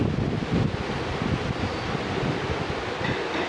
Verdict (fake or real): real